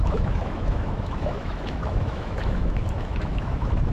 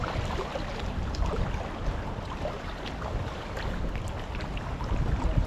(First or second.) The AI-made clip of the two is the first